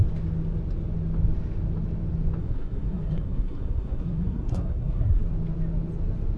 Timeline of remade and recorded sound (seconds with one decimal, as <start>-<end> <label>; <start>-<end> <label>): 0.0-2.4 recorded; 2.4-5.2 remade; 5.2-6.4 recorded

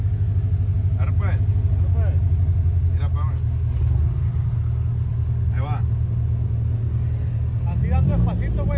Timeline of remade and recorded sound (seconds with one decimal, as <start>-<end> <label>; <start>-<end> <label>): 0.0-8.8 recorded